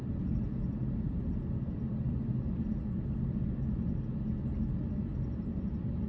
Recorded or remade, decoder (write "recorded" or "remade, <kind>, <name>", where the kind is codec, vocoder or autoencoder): recorded